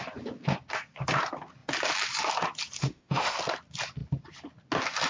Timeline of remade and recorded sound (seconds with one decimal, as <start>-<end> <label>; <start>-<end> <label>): 0.0-2.8 recorded; 2.8-3.4 remade; 3.4-5.1 recorded